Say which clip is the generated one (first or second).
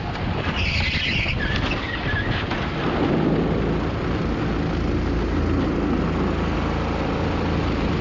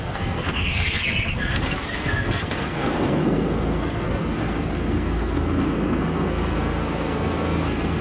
second